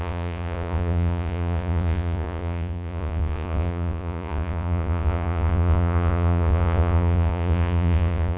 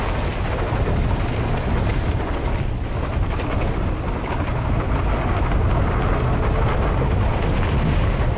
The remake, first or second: first